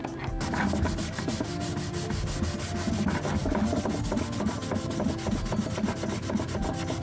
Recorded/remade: recorded